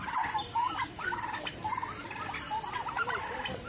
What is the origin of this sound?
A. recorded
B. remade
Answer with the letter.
A